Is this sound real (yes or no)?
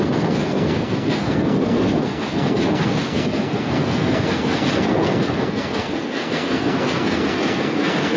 no